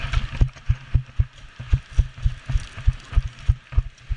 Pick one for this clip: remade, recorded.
recorded